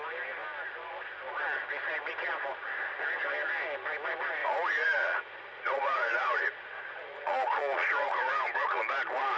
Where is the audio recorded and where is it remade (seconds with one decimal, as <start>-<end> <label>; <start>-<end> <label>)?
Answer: 0.0-4.4 recorded; 4.4-8.8 remade; 8.8-9.4 recorded